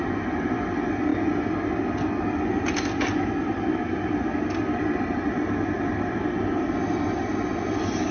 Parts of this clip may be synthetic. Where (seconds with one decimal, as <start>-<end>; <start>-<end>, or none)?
0.0-1.1; 2.5-8.1